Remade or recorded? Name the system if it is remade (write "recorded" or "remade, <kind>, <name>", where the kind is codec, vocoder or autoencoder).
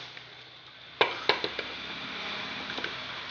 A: recorded